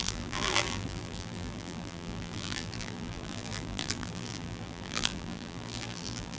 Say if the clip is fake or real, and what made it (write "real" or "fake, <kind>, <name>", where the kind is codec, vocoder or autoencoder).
fake, vocoder, BigVGAN v2